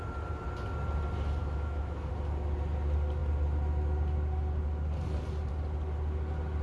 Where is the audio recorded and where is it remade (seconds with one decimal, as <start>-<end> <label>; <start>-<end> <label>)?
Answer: 0.0-1.4 recorded; 1.4-2.1 remade; 2.1-6.6 recorded